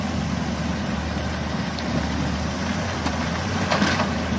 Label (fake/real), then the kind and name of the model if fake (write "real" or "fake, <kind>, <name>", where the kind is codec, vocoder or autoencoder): real